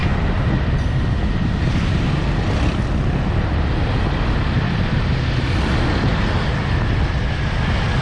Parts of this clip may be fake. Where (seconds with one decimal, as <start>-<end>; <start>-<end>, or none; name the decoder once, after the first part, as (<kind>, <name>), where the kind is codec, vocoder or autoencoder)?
6.1-7.1 (vocoder, BigVGAN v2)